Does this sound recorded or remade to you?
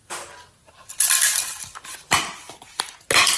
recorded